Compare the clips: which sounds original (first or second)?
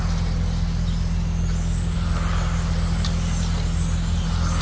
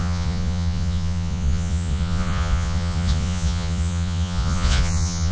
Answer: first